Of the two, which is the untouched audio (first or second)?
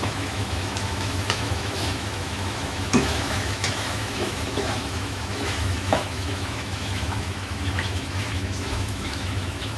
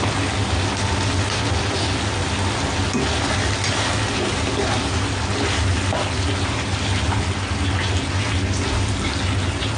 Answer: second